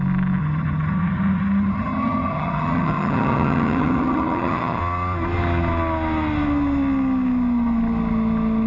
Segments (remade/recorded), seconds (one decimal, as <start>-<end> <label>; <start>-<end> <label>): 0.0-0.4 recorded; 0.4-4.8 remade; 4.8-8.7 recorded